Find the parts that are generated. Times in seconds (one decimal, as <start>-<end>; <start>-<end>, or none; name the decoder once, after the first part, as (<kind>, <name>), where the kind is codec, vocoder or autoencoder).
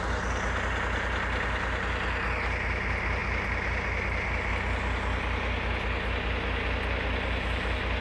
none